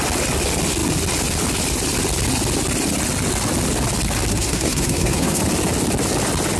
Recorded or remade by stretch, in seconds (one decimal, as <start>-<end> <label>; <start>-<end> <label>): 0.0-4.3 recorded; 4.3-5.4 remade; 5.4-6.6 recorded